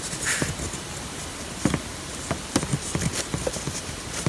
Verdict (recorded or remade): recorded